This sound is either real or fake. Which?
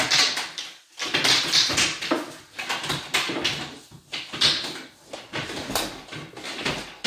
real